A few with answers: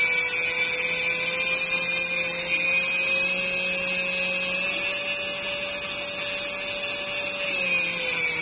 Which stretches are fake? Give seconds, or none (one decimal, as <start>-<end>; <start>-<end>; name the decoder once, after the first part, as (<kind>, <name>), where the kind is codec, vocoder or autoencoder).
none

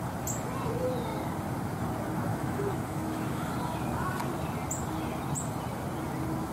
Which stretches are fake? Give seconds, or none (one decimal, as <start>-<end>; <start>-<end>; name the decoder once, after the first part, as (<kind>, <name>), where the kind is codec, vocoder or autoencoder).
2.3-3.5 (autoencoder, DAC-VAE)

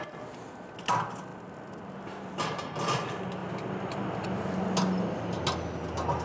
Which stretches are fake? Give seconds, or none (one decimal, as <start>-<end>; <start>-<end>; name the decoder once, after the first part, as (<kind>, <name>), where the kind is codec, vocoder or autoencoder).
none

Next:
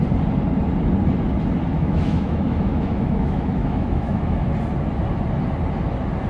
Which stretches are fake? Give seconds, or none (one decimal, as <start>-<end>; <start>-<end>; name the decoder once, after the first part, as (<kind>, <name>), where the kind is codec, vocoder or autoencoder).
1.7-4.5 (autoencoder, DAC-VAE)